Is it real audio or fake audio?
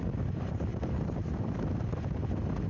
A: real